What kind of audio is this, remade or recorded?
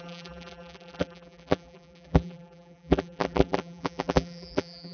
remade